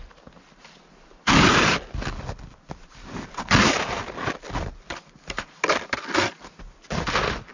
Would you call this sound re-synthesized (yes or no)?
no